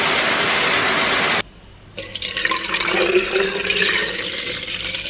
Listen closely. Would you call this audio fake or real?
real